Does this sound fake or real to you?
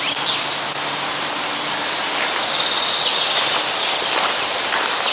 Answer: real